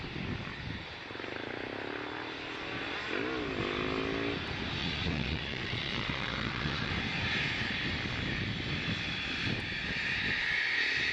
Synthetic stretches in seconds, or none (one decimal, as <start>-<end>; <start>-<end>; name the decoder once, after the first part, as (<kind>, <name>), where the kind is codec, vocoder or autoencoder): 4.8-6.9 (vocoder, Vocos)